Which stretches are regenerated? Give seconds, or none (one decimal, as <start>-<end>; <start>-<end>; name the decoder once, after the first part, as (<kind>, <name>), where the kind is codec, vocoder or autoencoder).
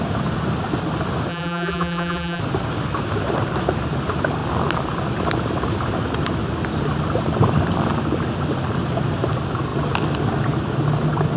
1.3-2.4 (vocoder, BigVGAN v2)